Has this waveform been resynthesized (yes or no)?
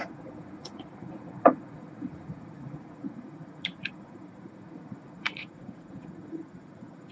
yes